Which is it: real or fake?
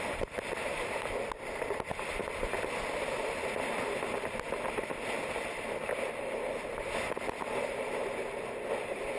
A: real